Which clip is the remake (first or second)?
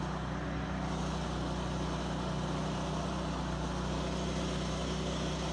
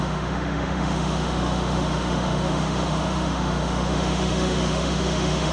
second